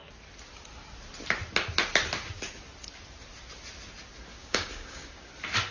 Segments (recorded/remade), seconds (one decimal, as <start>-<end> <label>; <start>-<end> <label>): 0.0-4.3 recorded; 4.3-5.3 remade; 5.3-5.7 recorded